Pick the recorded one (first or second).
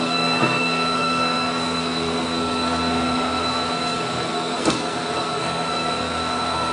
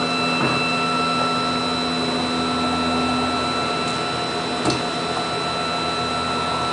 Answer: second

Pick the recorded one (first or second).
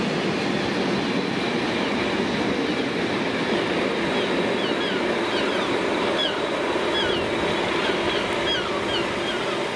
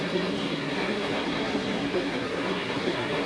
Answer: first